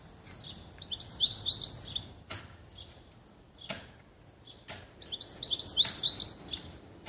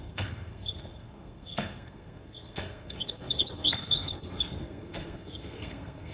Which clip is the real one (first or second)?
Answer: first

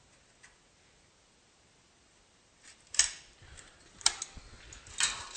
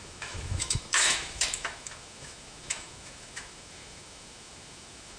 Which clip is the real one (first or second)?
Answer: first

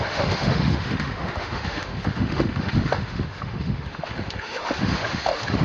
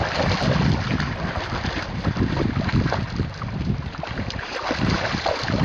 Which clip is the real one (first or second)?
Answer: second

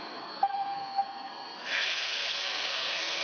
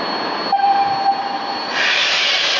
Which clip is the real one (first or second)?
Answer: second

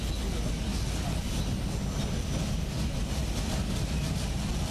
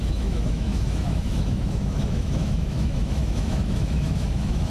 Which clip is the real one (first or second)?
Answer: first